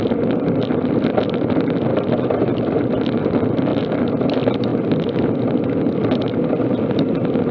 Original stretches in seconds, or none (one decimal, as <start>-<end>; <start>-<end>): 1.9-2.8; 3.7-4.3